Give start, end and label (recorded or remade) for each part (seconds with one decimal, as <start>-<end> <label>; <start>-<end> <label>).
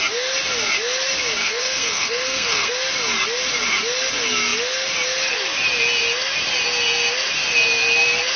0.0-1.4 recorded; 1.4-2.7 remade; 2.7-8.4 recorded